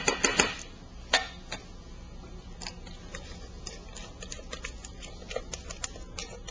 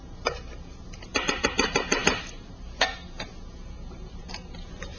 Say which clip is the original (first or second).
first